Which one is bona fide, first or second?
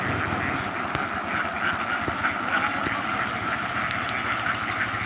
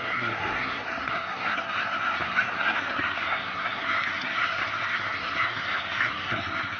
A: first